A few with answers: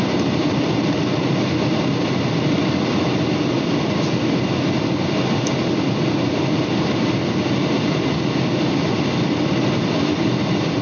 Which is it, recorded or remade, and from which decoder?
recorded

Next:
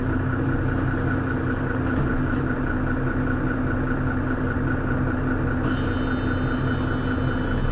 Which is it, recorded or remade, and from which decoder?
recorded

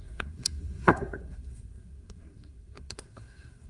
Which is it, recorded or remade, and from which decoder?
remade, codec, SNAC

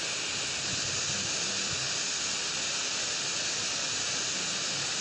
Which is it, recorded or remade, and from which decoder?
recorded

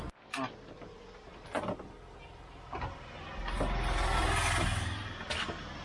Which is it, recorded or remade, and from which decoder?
recorded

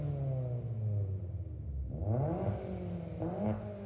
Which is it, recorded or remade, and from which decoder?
recorded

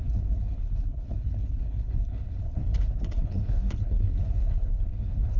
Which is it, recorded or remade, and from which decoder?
remade, codec, HILCodec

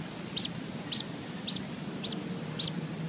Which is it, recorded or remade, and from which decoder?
recorded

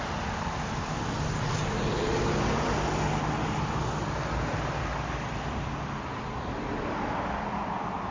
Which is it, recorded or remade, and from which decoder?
recorded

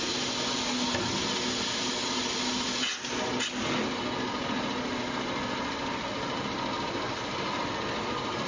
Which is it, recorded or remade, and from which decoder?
recorded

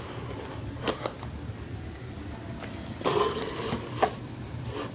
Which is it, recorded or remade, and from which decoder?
recorded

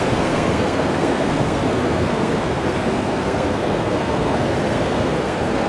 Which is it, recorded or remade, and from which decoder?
remade, codec, SNAC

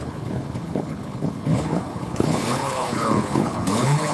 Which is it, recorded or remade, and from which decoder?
remade, codec, HILCodec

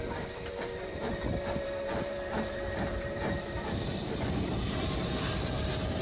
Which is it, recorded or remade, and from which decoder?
remade, vocoder, BigVGAN v2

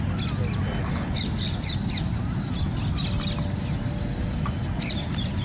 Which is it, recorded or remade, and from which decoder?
recorded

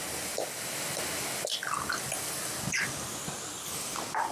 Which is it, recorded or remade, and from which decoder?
recorded